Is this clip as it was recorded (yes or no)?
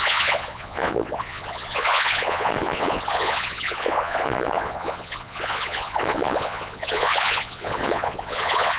no